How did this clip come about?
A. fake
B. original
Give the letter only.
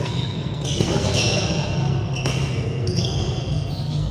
A